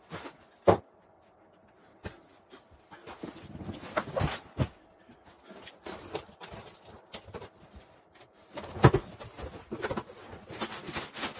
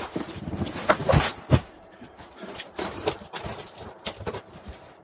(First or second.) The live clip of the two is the first